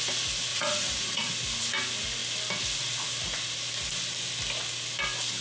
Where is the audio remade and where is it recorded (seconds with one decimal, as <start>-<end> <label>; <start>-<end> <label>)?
0.0-0.5 recorded; 0.5-1.3 remade; 1.3-5.4 recorded